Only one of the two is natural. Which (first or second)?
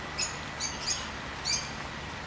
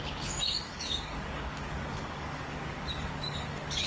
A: first